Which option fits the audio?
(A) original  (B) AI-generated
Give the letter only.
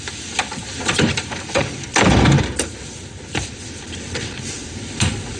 A